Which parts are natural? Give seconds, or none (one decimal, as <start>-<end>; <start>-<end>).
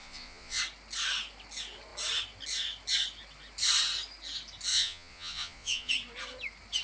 0.6-4.7; 5.9-6.8